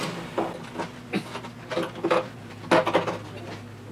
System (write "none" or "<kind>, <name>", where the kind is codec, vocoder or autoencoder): none